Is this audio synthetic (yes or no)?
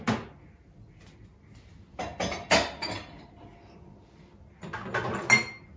no